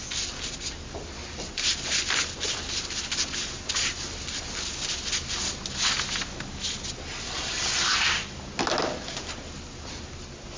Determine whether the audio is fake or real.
real